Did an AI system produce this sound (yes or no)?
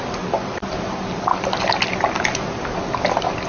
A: no